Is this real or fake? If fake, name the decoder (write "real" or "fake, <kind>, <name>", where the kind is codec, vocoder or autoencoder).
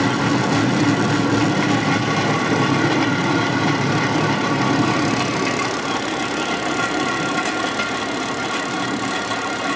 real